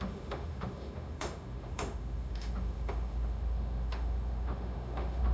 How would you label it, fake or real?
fake